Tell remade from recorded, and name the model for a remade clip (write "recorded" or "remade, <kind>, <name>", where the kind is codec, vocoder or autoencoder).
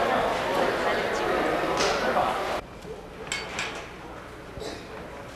recorded